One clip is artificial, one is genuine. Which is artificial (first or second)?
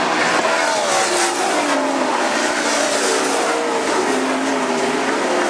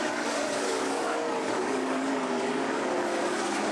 second